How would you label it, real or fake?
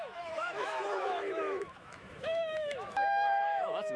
fake